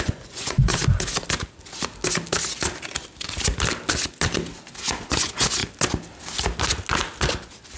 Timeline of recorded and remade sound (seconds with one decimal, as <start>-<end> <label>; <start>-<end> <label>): 0.0-0.7 remade; 0.7-4.8 recorded; 4.8-5.6 remade; 5.6-7.8 recorded